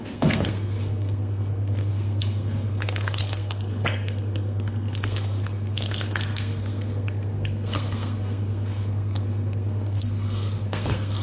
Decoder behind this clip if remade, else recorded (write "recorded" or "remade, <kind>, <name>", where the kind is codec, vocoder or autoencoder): remade, codec, SNAC